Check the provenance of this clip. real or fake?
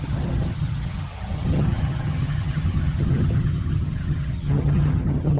fake